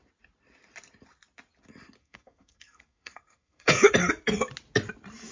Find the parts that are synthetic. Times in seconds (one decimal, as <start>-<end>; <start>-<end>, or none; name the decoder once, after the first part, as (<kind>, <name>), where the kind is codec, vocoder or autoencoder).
2.0-3.9 (codec, SNAC)